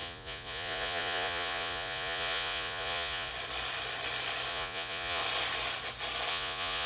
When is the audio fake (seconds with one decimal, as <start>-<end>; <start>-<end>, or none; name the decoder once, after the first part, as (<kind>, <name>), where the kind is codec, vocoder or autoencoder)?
0.0-3.3 (vocoder, Vocos); 4.5-5.2; 6.3-6.9